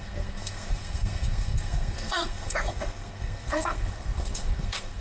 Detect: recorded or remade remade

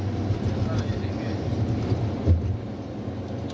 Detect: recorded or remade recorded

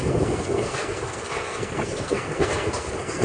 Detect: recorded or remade remade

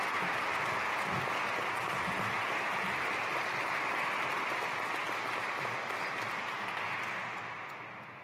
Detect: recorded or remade recorded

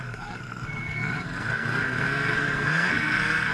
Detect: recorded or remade remade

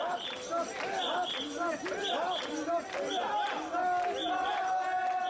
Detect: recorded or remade recorded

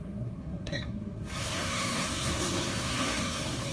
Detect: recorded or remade remade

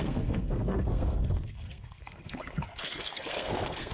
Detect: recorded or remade remade